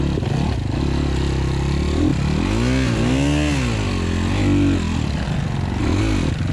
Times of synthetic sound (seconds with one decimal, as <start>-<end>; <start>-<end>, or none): none